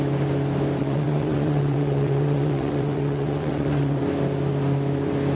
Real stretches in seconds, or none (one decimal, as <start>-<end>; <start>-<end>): 0.0-0.8; 4.0-5.4